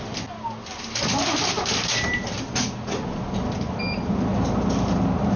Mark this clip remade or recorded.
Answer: recorded